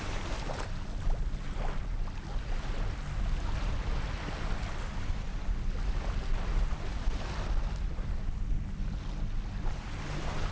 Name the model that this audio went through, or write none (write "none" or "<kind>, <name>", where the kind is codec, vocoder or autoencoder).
none